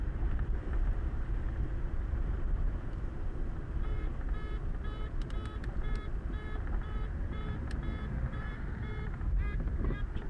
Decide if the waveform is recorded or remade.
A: remade